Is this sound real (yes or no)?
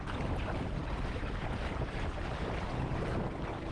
no